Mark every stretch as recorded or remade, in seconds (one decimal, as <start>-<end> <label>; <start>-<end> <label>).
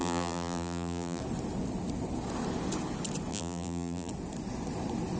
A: 0.0-1.2 remade; 1.2-3.3 recorded; 3.3-4.1 remade; 4.1-5.2 recorded